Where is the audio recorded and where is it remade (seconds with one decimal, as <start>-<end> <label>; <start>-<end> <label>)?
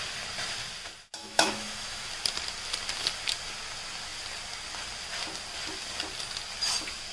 0.0-1.2 recorded; 1.2-2.1 remade; 2.1-7.1 recorded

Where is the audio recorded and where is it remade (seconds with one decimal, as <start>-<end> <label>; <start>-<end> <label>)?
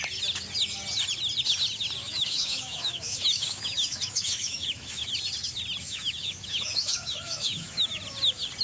0.0-2.0 recorded; 2.0-5.1 remade; 5.1-5.8 recorded; 5.8-7.9 remade; 7.9-8.6 recorded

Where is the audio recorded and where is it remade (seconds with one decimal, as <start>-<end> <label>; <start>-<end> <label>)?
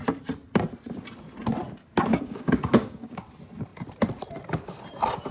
0.0-2.1 recorded; 2.1-3.2 remade; 3.2-5.3 recorded